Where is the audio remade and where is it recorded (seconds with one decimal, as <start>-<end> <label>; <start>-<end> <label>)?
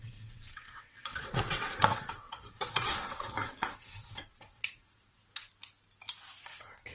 0.0-5.2 remade; 5.2-6.2 recorded; 6.2-6.9 remade